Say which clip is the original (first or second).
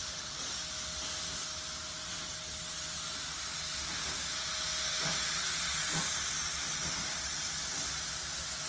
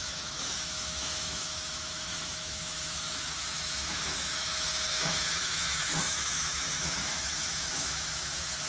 first